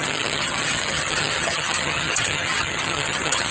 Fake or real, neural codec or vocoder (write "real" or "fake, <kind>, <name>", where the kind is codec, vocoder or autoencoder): fake, vocoder, HiFi-GAN